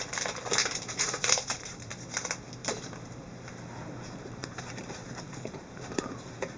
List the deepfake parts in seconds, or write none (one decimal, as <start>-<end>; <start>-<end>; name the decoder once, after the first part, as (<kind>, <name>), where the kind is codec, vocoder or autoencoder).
0.6-1.9 (vocoder, BigVGAN v2); 2.6-6.6